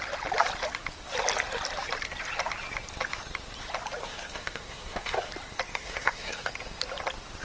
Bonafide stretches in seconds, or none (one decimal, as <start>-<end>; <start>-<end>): 0.0-4.0; 5.3-5.7; 6.5-7.4